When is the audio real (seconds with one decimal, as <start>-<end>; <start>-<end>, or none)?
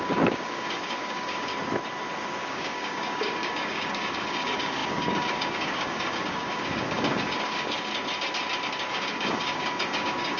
1.5-2.5; 7.9-8.9